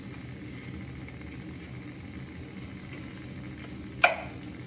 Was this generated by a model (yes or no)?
no